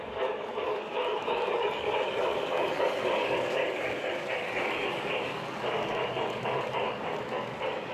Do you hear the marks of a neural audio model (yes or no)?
yes